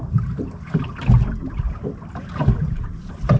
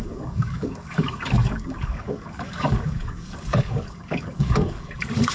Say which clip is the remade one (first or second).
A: second